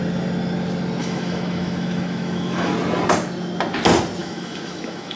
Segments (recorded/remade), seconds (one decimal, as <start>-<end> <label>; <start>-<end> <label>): 0.0-1.0 recorded; 1.0-2.7 remade; 2.7-4.2 recorded; 4.2-5.2 remade